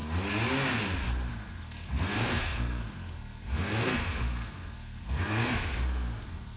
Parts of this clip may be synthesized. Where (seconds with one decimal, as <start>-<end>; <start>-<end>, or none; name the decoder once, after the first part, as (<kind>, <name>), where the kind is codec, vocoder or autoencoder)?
1.3-6.6 (codec, SNAC)